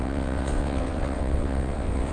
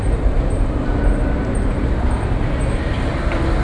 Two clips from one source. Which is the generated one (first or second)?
first